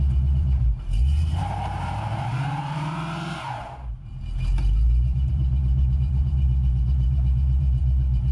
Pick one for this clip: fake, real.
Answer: fake